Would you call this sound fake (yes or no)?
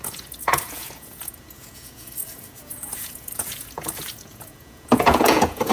yes